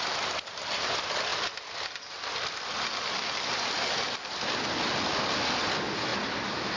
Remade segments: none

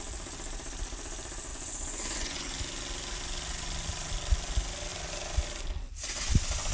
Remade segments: 1.5-2.5 (vocoder, Vocos)

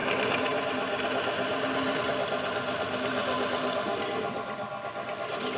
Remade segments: none

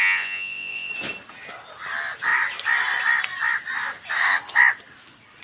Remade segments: 0.0-0.9 (vocoder, Vocos)

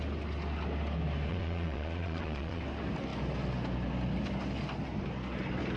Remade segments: 1.3-2.6 (vocoder, Vocos)

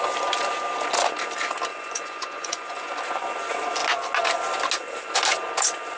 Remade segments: 1.7-2.9 (vocoder, Vocos)

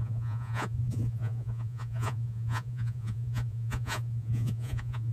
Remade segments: 0.0-5.1 (vocoder, Vocos)